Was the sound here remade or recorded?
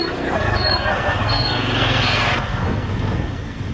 remade